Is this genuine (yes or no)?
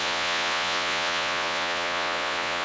no